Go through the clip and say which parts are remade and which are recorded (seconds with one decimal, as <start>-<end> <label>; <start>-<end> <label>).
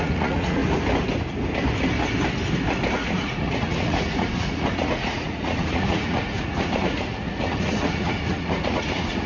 0.0-0.6 remade; 0.6-2.9 recorded; 2.9-9.3 remade